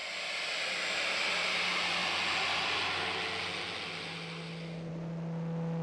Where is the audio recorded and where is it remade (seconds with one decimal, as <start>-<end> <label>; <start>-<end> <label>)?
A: 0.0-5.8 recorded